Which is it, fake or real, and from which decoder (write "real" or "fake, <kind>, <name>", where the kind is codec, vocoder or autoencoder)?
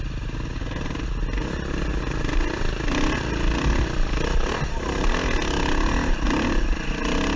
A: real